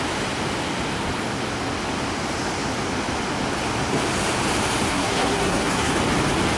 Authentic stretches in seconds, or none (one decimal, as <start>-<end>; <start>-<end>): 0.0-4.9; 5.9-6.6